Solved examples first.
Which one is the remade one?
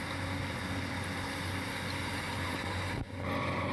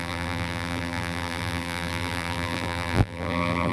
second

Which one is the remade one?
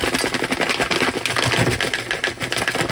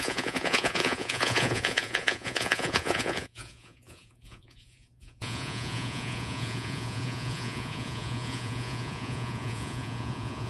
second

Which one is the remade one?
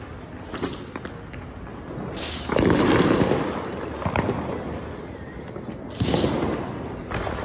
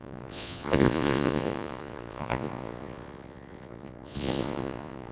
second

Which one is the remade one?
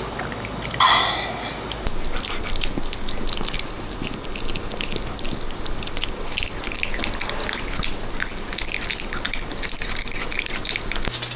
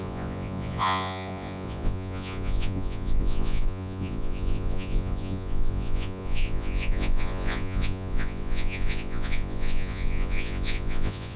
second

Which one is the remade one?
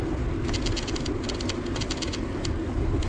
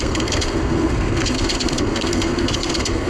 second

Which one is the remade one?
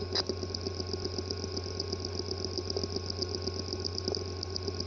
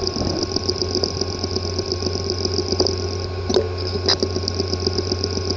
second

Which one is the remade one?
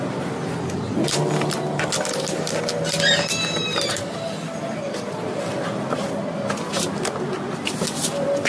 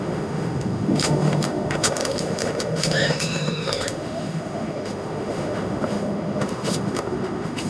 second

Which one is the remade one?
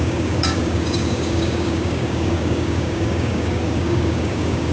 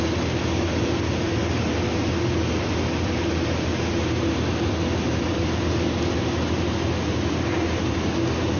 first